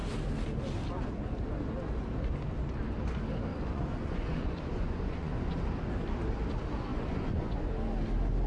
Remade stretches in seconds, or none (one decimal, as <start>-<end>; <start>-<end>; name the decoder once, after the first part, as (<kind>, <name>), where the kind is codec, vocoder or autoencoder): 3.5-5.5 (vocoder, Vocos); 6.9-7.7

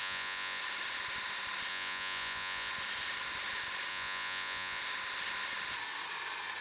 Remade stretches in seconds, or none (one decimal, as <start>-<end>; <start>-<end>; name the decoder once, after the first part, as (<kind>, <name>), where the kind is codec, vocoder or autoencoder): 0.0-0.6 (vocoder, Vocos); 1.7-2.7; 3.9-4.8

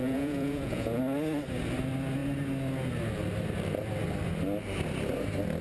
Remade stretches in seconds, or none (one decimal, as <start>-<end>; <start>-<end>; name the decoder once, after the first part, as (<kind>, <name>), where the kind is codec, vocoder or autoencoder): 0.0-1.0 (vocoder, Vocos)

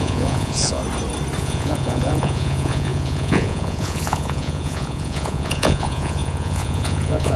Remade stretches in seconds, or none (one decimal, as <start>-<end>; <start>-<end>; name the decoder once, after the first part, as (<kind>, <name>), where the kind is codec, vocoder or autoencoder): 0.0-0.8 (vocoder, Vocos); 1.4-7.4

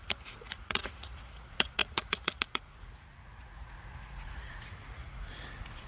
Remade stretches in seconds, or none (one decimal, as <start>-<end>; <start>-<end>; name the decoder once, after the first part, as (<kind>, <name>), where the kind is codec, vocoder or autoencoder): 0.0-5.9 (vocoder, Vocos)